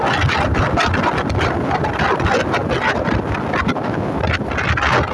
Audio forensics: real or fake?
real